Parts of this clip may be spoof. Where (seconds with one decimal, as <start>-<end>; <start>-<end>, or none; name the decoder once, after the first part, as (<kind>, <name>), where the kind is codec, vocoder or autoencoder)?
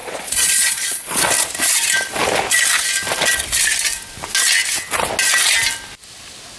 0.0-1.3 (vocoder, Vocos)